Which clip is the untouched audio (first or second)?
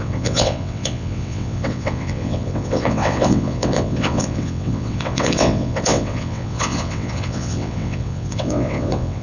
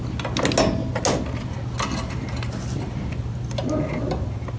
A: second